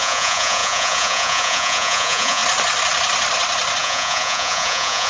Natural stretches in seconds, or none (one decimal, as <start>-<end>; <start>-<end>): 2.4-3.8

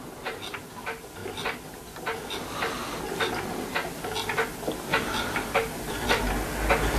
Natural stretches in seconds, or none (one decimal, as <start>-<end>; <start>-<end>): 0.0-4.9; 6.3-7.0

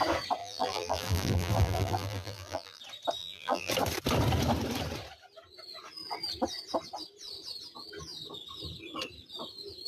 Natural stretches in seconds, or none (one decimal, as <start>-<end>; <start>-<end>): 0.0-0.4; 2.8-3.2; 3.7-9.9

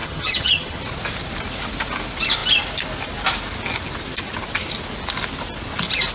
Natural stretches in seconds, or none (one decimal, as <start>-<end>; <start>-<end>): 0.8-6.1

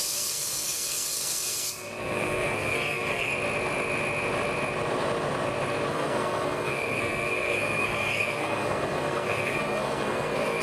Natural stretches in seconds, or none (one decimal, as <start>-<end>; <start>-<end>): 3.3-5.9